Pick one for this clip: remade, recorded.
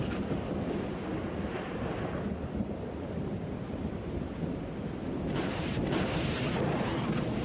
recorded